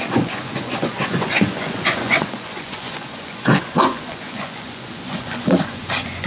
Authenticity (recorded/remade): remade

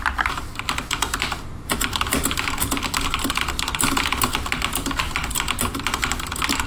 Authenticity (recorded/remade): recorded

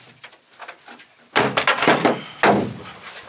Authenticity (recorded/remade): recorded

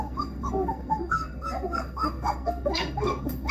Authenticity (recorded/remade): remade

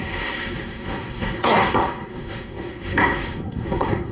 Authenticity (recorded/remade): remade